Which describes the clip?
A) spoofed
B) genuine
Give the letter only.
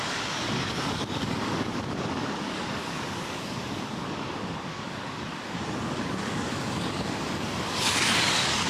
A